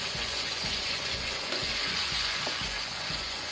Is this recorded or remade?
remade